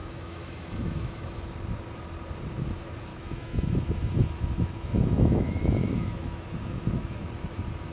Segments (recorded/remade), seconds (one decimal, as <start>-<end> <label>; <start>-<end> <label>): 0.0-1.4 remade; 1.4-3.1 recorded; 3.1-7.3 remade; 7.3-7.9 recorded